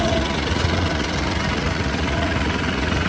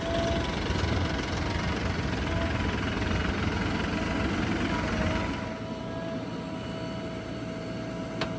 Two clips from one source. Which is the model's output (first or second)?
first